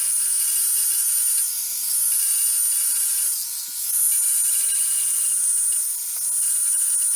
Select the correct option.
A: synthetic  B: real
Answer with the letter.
B